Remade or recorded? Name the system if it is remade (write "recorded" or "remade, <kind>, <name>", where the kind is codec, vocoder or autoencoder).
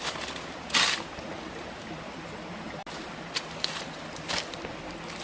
recorded